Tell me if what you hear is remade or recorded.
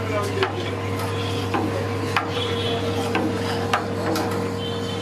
recorded